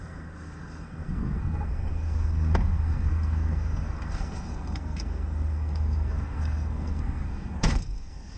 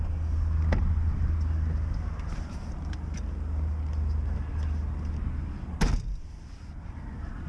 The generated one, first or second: first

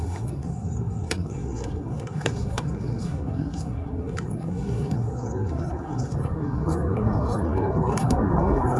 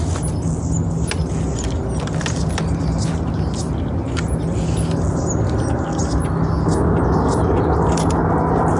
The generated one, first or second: first